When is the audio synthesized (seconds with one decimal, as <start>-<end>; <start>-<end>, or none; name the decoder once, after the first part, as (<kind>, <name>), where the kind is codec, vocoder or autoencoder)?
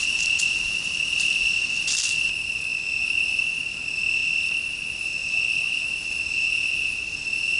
2.7-3.6 (vocoder, Vocos); 5.2-5.8